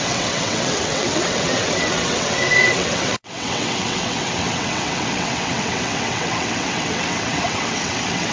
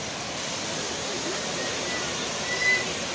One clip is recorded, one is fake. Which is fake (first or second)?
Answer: first